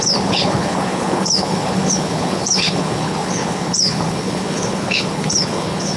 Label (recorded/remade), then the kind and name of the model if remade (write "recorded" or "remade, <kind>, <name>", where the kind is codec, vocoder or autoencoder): remade, codec, HILCodec